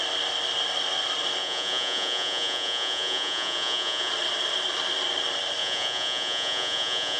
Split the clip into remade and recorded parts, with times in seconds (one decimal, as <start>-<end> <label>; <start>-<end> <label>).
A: 0.0-1.4 recorded; 1.4-4.1 remade; 4.1-5.6 recorded; 5.6-7.2 remade